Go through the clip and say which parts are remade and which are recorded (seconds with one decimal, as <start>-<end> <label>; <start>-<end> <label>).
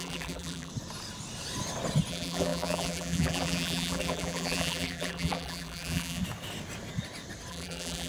0.0-0.7 remade; 0.7-2.1 recorded; 2.1-6.2 remade; 6.2-7.5 recorded; 7.5-8.1 remade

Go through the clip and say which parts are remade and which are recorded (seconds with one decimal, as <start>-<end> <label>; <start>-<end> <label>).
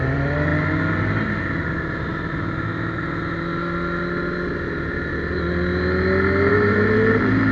0.0-2.7 remade; 2.7-6.5 recorded; 6.5-7.5 remade